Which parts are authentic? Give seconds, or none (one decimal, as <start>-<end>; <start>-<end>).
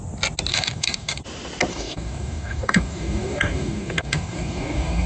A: 0.0-0.5; 1.2-1.7